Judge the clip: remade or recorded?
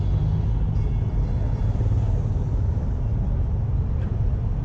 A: recorded